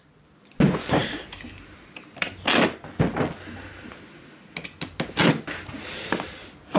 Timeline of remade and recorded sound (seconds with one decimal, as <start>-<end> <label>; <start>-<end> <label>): 0.0-1.0 recorded; 1.0-2.3 remade; 2.3-6.8 recorded